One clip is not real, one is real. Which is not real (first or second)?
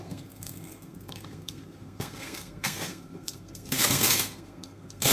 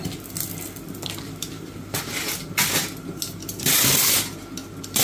first